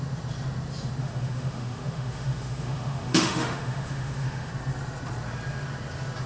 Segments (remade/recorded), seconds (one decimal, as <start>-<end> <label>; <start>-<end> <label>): 0.0-1.0 recorded; 1.0-4.5 remade; 4.5-6.3 recorded